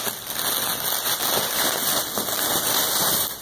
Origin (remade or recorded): recorded